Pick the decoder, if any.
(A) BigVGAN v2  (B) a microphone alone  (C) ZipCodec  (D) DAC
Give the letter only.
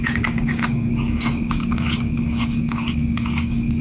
D